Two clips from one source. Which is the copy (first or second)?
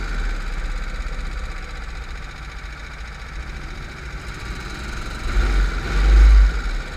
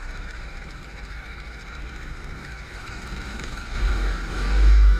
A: second